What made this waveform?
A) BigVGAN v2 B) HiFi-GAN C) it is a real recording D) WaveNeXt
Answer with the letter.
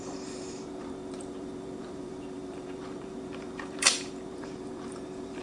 A